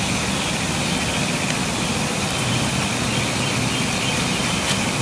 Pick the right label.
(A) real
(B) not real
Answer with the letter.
A